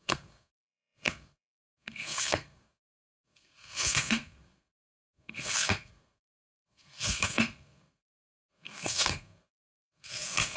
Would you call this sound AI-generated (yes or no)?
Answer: yes